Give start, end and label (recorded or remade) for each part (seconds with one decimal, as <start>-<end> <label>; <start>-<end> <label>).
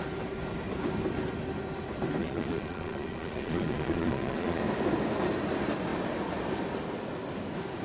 0.0-2.2 recorded; 2.2-4.6 remade; 4.6-7.8 recorded